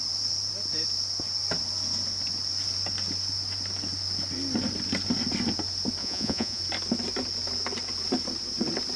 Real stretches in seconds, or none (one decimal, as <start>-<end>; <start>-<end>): 0.0-6.0; 6.6-9.0